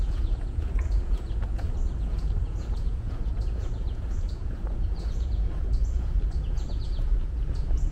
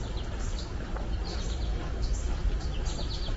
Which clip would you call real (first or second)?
second